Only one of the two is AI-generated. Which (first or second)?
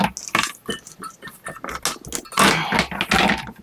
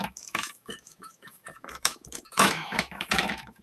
second